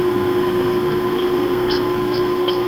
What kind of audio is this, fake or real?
fake